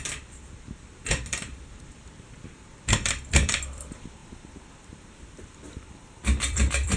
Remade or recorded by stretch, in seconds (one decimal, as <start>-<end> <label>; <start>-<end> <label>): 0.0-7.0 remade